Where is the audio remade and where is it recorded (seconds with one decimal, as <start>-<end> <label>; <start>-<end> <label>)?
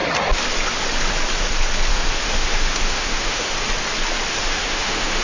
0.0-1.9 recorded; 1.9-3.5 remade; 3.5-4.3 recorded; 4.3-5.2 remade